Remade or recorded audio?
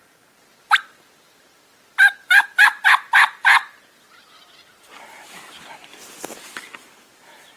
recorded